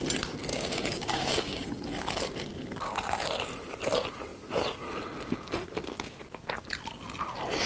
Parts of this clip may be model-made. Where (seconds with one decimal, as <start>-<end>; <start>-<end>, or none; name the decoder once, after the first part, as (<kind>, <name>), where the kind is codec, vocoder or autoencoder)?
0.5-1.7 (codec, DAC)